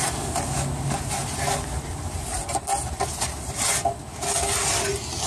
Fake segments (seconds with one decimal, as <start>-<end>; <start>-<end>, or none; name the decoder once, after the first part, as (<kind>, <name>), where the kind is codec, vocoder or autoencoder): none